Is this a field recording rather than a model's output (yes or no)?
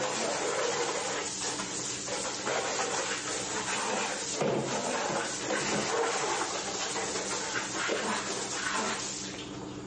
yes